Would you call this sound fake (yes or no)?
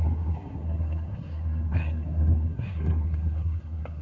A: yes